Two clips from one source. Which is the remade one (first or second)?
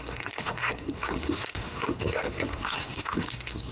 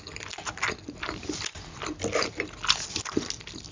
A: first